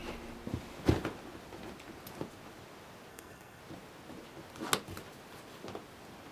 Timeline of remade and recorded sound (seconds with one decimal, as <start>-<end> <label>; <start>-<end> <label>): 0.0-3.1 recorded; 3.1-3.6 remade; 3.6-6.3 recorded